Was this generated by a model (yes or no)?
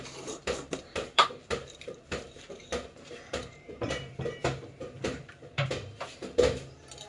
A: yes